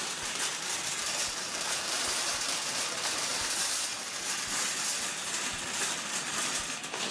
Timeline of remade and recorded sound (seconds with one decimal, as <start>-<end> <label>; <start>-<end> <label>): 0.0-3.3 remade; 3.3-7.1 recorded

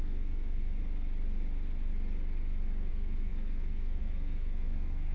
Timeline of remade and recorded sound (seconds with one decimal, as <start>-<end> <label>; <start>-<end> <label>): 0.0-0.8 remade; 0.8-2.9 recorded; 2.9-5.1 remade

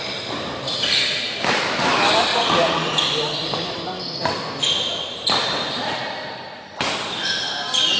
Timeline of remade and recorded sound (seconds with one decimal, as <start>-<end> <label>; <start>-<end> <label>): 0.0-2.3 recorded; 2.3-3.0 remade; 3.0-8.0 recorded

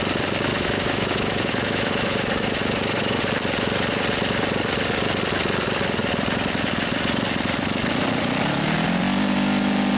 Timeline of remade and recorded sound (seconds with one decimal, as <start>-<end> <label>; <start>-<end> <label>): 0.0-0.5 recorded; 0.5-3.2 remade; 3.2-10.0 recorded

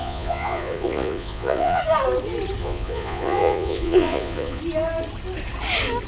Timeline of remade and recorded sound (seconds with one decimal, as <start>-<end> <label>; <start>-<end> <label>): 0.0-1.8 remade; 1.8-2.6 recorded; 2.6-4.6 remade; 4.6-6.1 recorded